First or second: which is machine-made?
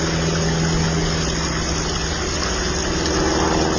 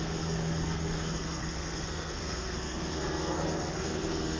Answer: second